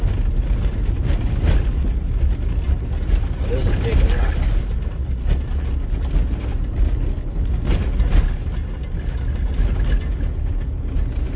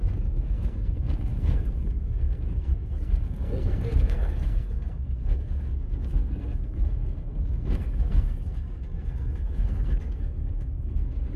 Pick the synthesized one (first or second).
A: second